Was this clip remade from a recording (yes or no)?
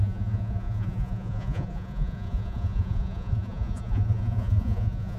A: yes